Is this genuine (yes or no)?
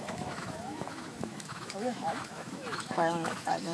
no